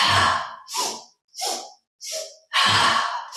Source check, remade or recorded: recorded